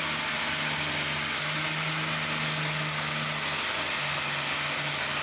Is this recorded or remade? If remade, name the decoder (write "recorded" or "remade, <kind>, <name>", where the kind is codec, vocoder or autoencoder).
recorded